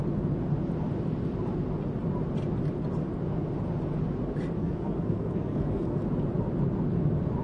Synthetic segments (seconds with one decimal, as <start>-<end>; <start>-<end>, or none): 4.6-6.0